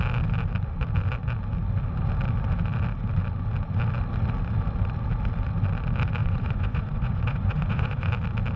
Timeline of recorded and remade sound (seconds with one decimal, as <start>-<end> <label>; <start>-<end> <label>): 0.0-6.2 recorded; 6.2-8.1 remade; 8.1-8.6 recorded